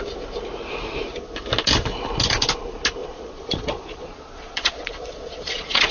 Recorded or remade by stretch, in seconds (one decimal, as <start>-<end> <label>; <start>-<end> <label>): 0.0-3.0 recorded; 3.0-5.9 remade